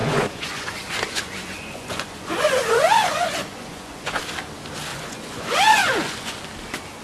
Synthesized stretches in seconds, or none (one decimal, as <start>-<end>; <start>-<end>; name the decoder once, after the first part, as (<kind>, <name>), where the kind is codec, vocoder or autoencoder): 0.0-4.2 (vocoder, Vocos); 4.9-6.4